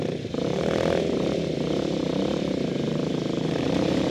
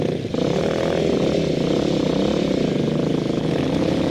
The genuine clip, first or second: second